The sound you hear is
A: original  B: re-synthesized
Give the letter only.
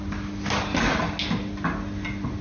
A